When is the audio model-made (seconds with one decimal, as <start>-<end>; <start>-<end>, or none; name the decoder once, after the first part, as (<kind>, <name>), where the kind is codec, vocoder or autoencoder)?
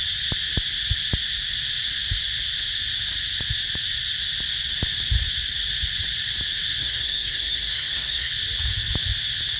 6.8-8.3 (codec, SNAC)